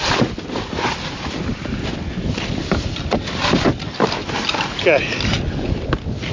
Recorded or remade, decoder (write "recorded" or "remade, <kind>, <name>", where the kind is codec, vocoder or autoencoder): recorded